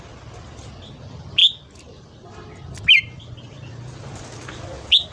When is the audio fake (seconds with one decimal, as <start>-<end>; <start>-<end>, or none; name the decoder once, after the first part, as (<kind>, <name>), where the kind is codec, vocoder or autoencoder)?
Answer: none